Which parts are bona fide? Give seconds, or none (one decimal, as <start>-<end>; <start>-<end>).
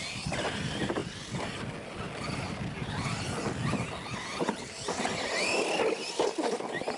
0.0-7.0